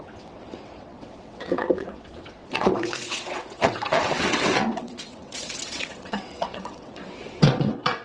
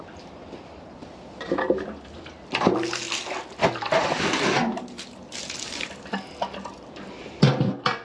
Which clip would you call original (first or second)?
second